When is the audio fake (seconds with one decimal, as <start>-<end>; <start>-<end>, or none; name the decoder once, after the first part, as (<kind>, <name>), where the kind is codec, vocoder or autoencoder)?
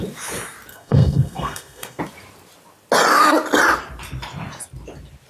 0.7-2.0 (codec, SNAC)